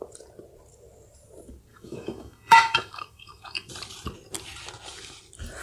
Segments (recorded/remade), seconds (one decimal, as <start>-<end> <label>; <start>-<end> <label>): 0.0-1.7 recorded; 1.7-3.7 remade; 3.7-5.6 recorded